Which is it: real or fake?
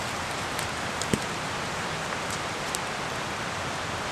fake